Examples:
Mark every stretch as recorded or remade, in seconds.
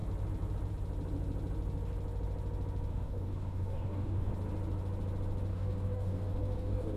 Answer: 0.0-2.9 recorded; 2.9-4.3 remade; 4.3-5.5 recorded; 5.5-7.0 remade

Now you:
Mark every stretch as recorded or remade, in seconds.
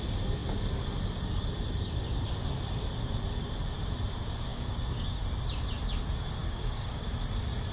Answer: 0.0-4.5 recorded; 4.5-5.2 remade; 5.2-6.4 recorded; 6.4-7.1 remade; 7.1-7.7 recorded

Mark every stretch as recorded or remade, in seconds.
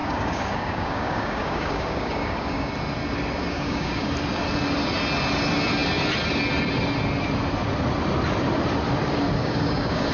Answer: 0.0-2.7 remade; 2.7-3.4 recorded; 3.4-4.1 remade; 4.1-9.4 recorded; 9.4-10.1 remade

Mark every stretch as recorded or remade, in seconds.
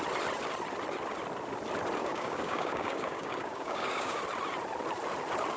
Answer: 0.0-2.0 recorded; 2.0-4.2 remade; 4.2-5.6 recorded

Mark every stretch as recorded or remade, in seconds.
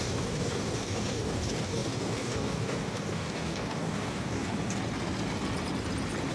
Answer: 0.0-4.8 remade; 4.8-6.3 recorded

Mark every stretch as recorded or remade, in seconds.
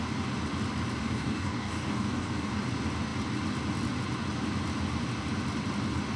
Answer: 0.0-1.0 recorded; 1.0-2.6 remade; 2.6-6.2 recorded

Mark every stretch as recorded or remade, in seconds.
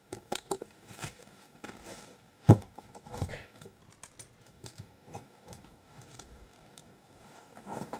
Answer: 0.0-3.8 remade; 3.8-4.4 recorded; 4.4-8.0 remade